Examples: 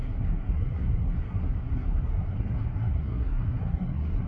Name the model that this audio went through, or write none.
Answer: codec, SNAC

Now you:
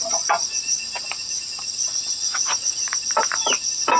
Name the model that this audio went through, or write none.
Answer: vocoder, BigVGAN v2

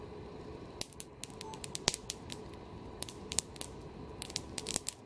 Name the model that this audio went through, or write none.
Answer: none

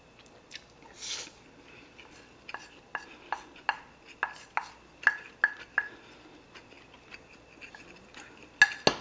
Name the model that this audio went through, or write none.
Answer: none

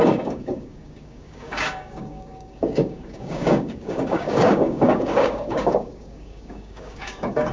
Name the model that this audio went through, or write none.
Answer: codec, DAC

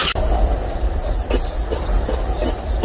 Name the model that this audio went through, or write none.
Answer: none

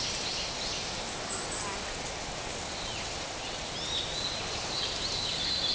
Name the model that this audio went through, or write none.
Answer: none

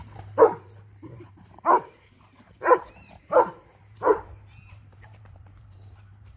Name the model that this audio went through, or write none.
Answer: vocoder, BigVGAN v2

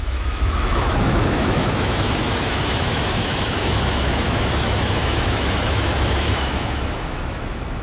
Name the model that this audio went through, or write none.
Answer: autoencoder, DAC-VAE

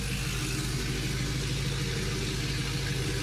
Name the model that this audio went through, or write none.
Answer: none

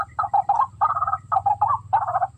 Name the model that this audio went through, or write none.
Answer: vocoder, BigVGAN v2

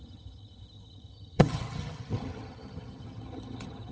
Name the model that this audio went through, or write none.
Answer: vocoder, HiFi-GAN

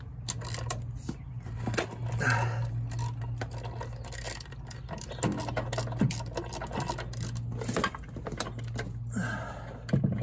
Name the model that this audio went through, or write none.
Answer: none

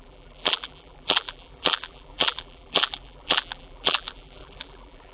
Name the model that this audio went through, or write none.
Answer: vocoder, BigVGAN v2